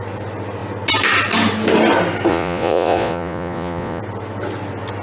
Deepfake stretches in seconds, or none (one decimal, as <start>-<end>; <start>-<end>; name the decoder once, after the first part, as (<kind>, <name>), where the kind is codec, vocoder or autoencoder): 2.3-4.0 (vocoder, Vocos)